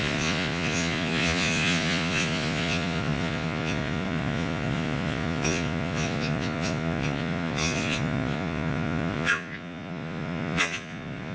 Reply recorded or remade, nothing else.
remade